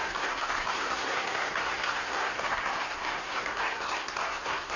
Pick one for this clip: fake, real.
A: fake